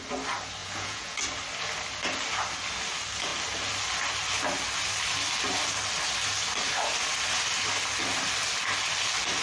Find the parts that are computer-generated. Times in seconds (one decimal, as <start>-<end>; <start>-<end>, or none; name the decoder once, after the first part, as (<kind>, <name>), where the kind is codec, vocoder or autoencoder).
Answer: 0.6-1.2 (vocoder, Vocos)